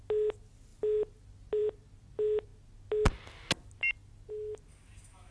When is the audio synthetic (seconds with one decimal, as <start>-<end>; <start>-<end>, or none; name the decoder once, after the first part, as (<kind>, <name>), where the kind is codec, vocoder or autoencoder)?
none